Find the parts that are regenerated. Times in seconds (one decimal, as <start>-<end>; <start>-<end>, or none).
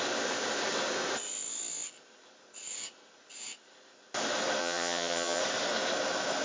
4.6-5.4